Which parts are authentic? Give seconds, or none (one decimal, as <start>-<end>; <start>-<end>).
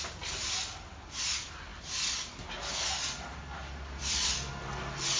0.0-5.2